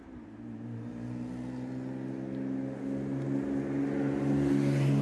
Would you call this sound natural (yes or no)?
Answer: yes